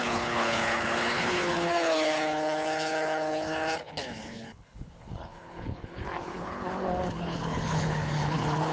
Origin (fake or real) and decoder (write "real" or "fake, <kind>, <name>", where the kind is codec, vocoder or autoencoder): fake, codec, HILCodec